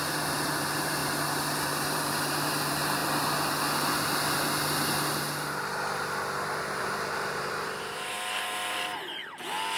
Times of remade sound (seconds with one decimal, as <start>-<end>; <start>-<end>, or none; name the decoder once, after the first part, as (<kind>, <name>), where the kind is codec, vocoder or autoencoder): 0.0-1.0 (vocoder, BigVGAN v2); 1.6-3.0; 6.8-9.2